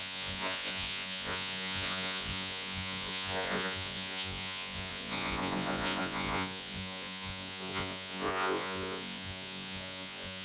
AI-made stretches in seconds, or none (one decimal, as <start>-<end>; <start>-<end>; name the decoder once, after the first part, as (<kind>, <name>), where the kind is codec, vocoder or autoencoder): 0.0-10.4 (vocoder, Vocos)